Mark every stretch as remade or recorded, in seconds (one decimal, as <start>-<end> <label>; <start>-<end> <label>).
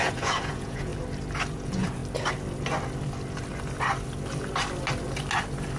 0.0-0.9 remade; 0.9-1.5 recorded; 1.5-2.0 remade; 2.0-5.8 recorded